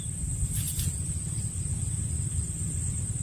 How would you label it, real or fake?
real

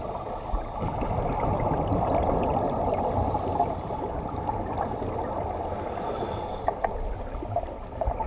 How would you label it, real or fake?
real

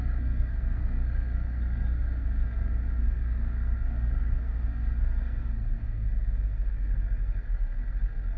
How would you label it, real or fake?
fake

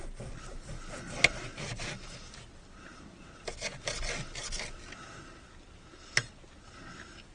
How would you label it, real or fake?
real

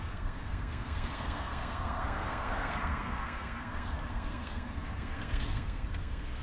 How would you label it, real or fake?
fake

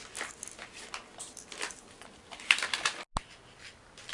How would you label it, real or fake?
real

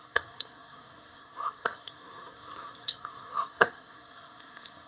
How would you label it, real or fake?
fake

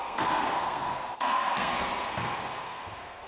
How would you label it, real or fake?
fake